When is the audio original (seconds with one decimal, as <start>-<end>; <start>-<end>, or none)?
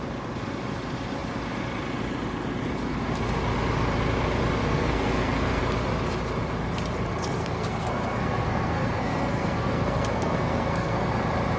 0.0-4.6; 5.6-7.2; 11.1-11.6